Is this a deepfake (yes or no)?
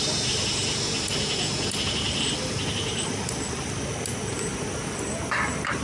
no